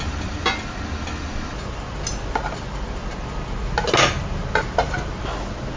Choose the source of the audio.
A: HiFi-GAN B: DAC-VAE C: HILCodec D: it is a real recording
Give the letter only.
D